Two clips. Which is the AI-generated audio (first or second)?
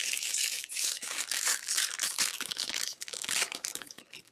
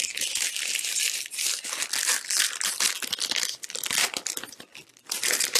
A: first